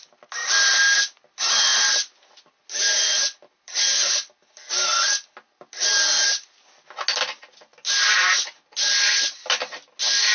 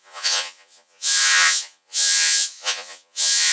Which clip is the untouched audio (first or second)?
first